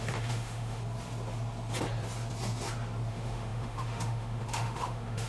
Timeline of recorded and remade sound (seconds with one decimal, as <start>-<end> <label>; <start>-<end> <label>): 0.0-0.8 remade; 0.8-3.1 recorded; 3.1-5.3 remade

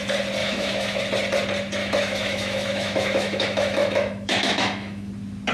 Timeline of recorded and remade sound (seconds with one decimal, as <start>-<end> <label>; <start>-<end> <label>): 0.0-0.4 recorded; 0.4-1.0 remade; 1.0-1.8 recorded; 1.8-5.1 remade; 5.1-5.5 recorded

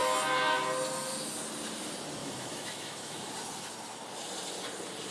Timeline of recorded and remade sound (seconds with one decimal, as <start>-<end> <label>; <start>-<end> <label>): 0.0-2.2 recorded; 2.2-3.3 remade; 3.3-5.1 recorded

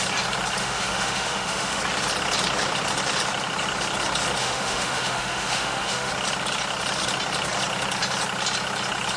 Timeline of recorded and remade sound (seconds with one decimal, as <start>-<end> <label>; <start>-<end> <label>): 0.0-0.6 recorded; 0.6-1.8 remade; 1.8-4.4 recorded; 4.4-6.1 remade; 6.1-9.2 recorded

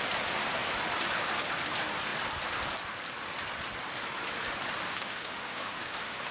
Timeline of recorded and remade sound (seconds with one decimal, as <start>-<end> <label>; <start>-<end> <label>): 0.0-4.9 recorded; 4.9-6.3 remade

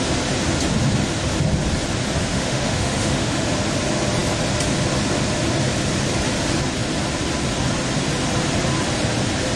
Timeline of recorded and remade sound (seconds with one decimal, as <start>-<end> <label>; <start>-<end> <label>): 0.0-2.3 recorded; 2.3-3.5 remade; 3.5-9.6 recorded